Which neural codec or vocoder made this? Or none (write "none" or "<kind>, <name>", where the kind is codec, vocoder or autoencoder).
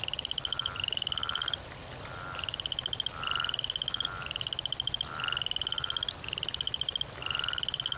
none